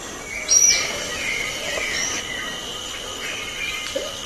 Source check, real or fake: fake